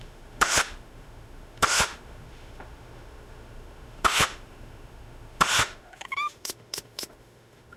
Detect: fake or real fake